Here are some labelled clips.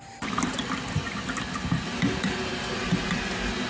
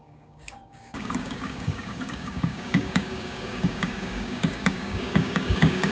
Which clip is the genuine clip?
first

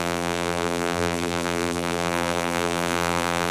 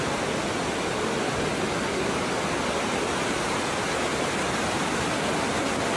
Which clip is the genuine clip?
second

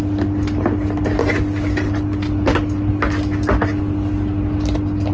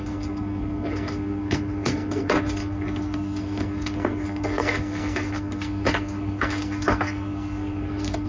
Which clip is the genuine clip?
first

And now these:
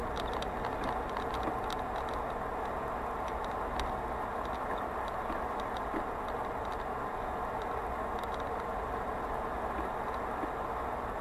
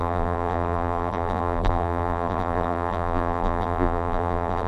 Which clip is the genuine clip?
first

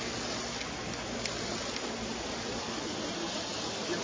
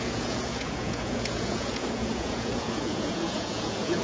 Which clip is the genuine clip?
first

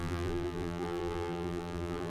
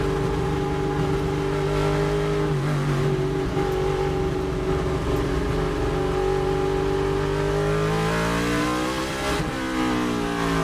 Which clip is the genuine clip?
second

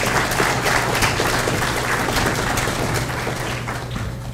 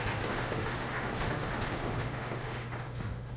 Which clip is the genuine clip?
first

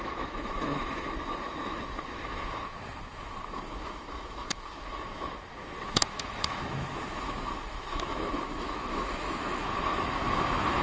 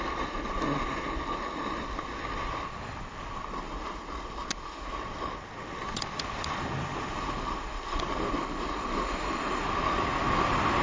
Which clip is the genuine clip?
second